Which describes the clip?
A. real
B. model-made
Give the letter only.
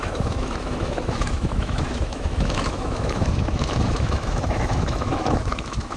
B